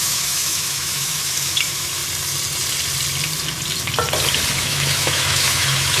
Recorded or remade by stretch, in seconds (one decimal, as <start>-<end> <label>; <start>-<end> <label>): 0.0-2.0 remade; 2.0-4.5 recorded; 4.5-6.0 remade